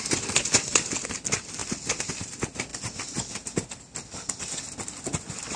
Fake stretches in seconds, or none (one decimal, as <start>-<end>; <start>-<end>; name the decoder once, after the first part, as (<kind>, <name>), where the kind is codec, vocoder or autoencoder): none

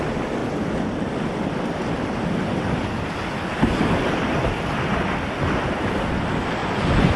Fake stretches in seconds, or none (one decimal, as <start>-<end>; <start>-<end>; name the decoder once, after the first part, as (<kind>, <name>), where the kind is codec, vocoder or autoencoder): 6.6-7.2 (vocoder, Vocos)

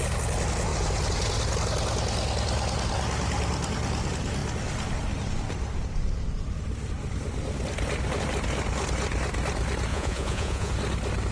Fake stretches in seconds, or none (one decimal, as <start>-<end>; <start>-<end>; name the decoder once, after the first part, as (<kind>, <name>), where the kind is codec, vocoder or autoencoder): 9.9-10.7 (vocoder, Vocos)

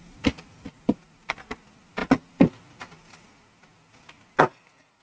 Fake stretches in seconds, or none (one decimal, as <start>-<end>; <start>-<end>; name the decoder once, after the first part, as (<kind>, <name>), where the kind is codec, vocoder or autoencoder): none